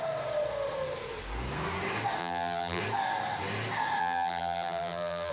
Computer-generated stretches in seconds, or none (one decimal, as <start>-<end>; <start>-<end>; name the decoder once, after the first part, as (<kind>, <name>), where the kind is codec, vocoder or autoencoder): 2.2-2.8 (vocoder, BigVGAN v2); 4.0-5.3